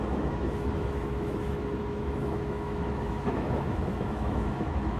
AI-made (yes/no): yes